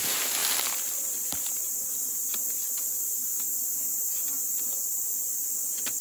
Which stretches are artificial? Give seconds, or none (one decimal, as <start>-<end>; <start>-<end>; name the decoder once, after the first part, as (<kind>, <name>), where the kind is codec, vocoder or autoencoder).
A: none